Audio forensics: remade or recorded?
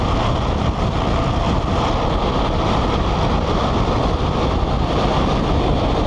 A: recorded